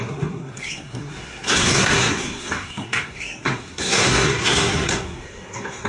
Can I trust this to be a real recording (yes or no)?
no